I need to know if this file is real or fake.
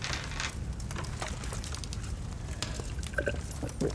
real